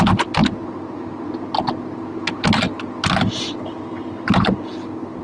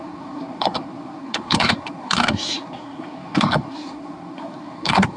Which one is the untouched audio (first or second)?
first